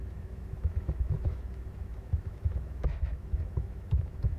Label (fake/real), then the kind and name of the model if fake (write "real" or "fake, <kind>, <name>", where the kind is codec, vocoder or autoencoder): fake, autoencoder, DAC-VAE